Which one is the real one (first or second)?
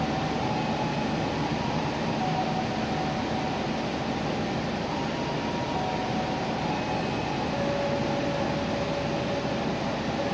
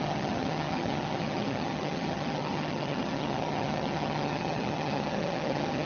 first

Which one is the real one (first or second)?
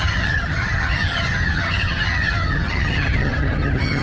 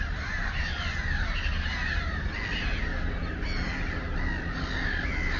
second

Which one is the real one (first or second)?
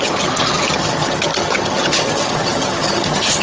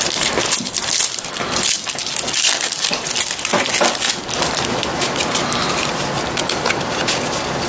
second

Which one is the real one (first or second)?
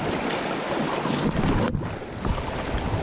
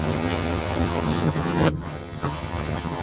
first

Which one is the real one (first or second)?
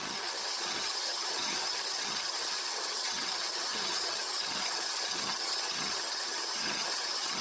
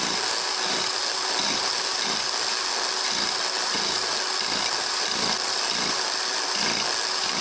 second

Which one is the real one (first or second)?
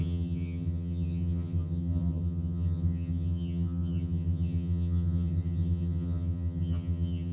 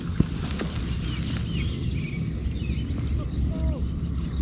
second